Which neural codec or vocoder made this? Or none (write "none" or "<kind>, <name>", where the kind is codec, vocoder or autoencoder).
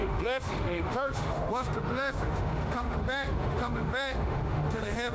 autoencoder, DAC-VAE